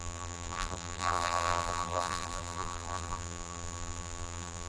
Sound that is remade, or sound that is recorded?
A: remade